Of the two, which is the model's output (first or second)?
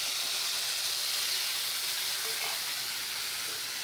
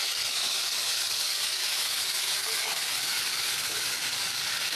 second